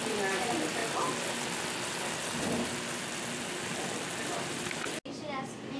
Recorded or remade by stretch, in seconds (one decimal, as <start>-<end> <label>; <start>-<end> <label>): 0.0-5.8 recorded